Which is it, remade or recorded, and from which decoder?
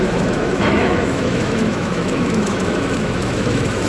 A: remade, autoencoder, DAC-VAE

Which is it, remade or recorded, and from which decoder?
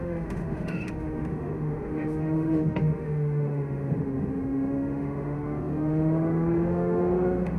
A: remade, autoencoder, DAC-VAE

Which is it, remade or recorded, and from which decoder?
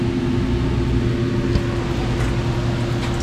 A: recorded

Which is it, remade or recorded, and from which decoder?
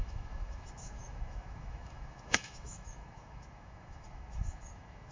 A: remade, autoencoder, DAC-VAE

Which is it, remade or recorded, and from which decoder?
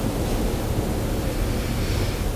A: recorded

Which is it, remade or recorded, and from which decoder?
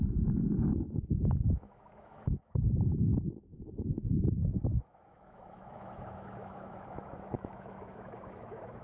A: remade, autoencoder, DAC-VAE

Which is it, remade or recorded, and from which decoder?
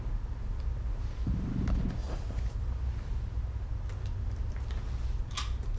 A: recorded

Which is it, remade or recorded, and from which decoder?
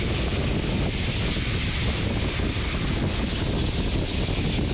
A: recorded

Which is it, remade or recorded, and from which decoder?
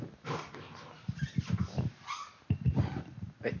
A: recorded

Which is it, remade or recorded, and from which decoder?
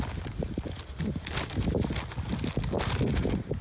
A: recorded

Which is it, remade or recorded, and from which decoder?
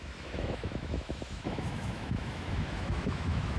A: remade, autoencoder, DAC-VAE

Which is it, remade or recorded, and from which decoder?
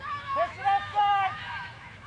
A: remade, autoencoder, DAC-VAE